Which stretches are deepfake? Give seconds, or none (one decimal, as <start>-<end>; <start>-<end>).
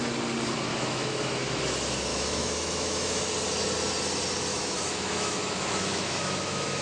0.7-1.6; 2.1-3.3; 4.5-6.8